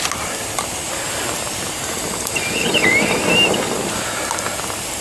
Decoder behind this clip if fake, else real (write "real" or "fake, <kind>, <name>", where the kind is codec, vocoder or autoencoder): real